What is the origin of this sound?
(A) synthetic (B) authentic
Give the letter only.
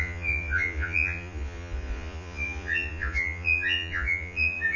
A